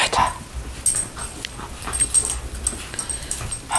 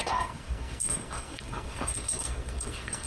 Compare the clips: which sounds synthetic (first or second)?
second